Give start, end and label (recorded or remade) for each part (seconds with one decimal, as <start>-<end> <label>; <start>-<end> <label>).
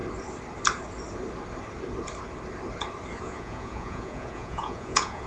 0.0-3.2 recorded; 3.2-5.3 remade